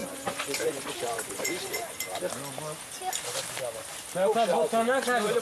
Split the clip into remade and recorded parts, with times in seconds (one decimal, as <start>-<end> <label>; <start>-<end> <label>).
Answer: 0.0-2.0 remade; 2.0-4.5 recorded; 4.5-5.4 remade